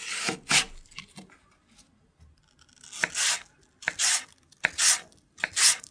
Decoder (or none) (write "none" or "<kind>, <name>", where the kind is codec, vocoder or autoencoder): none